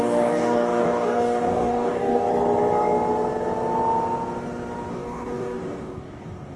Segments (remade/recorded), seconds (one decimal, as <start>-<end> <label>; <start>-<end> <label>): 0.0-2.3 remade; 2.3-4.9 recorded; 4.9-6.6 remade